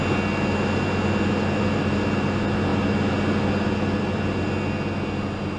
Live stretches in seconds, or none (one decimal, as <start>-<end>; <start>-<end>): 0.0-5.6

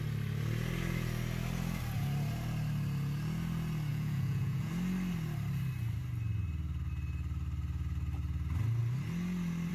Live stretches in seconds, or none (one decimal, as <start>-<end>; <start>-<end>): 0.0-3.9; 4.7-9.7

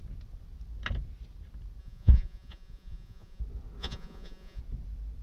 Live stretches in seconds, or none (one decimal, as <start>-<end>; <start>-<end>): 0.0-1.8; 3.4-3.8; 4.6-5.2

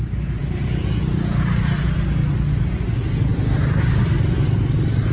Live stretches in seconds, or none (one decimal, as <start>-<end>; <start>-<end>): 0.0-5.1

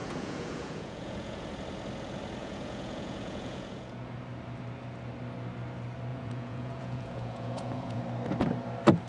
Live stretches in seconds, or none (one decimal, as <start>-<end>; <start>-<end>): 1.5-2.4; 4.1-6.1; 8.0-9.1